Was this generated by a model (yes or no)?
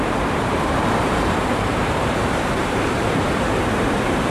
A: yes